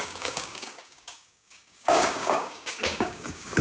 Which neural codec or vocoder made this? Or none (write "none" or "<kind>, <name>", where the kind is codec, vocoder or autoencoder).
codec, DAC